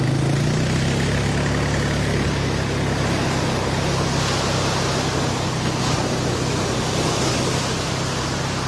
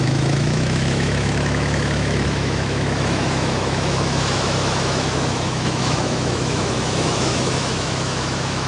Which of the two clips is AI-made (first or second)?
second